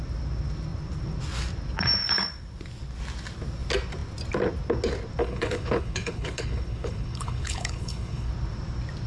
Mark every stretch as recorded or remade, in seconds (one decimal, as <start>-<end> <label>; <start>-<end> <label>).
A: 0.0-5.2 recorded; 5.2-8.3 remade; 8.3-9.1 recorded